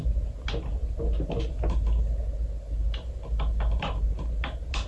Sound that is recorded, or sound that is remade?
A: recorded